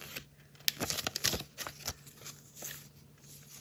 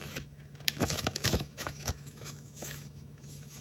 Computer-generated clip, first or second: second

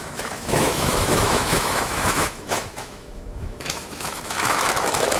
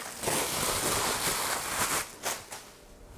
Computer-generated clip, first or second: first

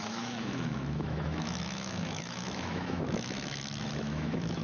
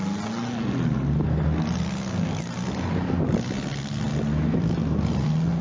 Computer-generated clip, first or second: first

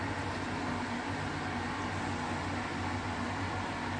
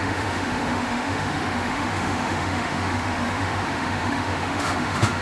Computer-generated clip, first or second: second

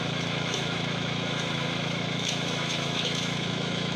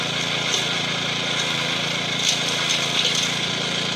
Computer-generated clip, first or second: first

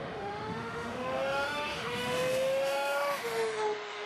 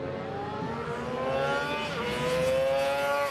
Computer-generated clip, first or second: first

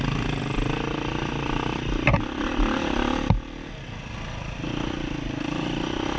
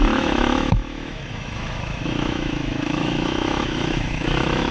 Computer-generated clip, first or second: second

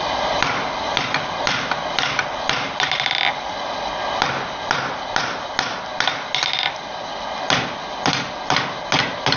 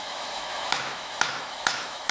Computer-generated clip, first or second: second